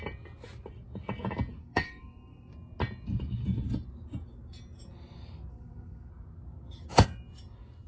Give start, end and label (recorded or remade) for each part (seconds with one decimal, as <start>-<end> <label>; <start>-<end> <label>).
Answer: 0.0-1.6 recorded; 1.6-2.5 remade; 2.5-5.5 recorded; 5.5-6.1 remade; 6.1-7.9 recorded